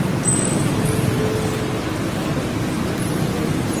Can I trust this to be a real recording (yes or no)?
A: yes